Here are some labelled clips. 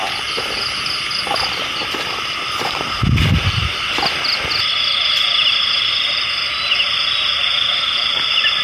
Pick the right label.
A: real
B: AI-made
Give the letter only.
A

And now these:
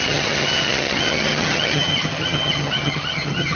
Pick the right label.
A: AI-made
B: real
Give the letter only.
A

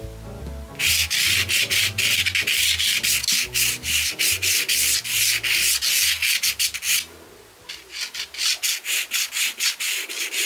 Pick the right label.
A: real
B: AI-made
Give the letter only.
A